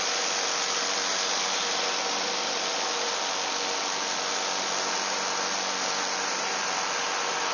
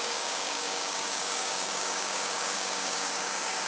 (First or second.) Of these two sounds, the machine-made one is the second